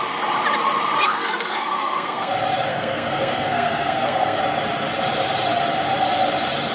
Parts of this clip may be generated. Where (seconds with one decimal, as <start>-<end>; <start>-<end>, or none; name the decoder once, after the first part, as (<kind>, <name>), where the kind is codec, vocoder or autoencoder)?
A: 1.0-2.3 (codec, SNAC); 2.7-4.4